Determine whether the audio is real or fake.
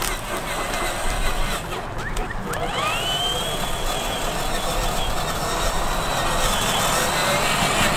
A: real